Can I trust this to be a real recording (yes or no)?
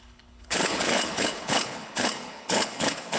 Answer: no